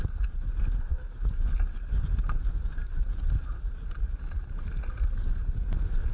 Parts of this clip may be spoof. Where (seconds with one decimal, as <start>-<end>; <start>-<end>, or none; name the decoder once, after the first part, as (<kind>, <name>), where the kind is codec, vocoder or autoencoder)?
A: none